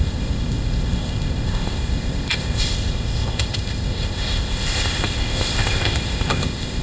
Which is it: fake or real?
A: fake